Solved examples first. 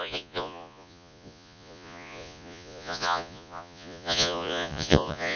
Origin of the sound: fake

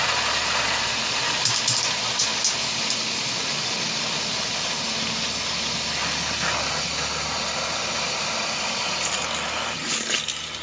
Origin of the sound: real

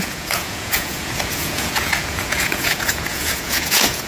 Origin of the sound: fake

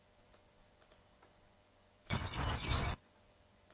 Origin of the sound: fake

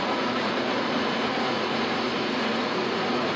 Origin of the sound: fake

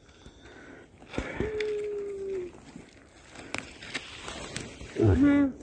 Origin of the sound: real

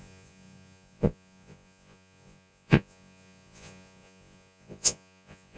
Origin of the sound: fake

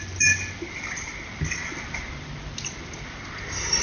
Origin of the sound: real